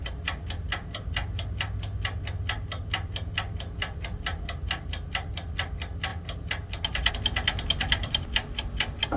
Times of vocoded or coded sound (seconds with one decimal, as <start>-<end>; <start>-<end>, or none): none